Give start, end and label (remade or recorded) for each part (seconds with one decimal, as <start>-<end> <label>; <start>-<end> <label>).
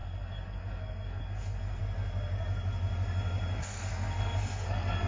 0.0-1.8 remade; 1.8-3.6 recorded; 3.6-5.1 remade